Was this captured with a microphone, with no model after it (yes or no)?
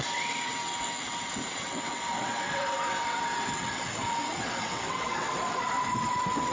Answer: no